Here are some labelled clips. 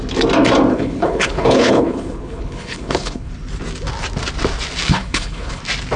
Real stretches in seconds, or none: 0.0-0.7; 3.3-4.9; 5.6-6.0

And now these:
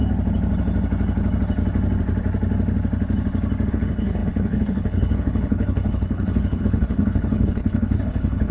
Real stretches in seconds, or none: 0.0-3.7

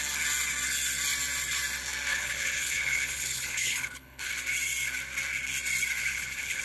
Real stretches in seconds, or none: 0.0-2.1; 4.3-6.0

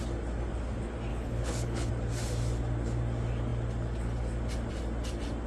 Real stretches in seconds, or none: 0.0-1.1; 1.9-5.5

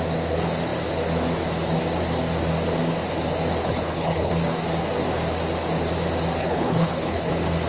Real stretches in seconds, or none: 0.0-3.6; 4.3-6.4; 7.3-7.7